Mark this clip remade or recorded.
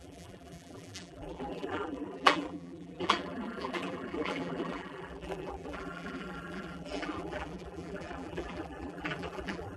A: remade